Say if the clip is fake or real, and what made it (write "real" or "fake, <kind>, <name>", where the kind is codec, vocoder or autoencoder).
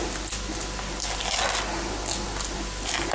real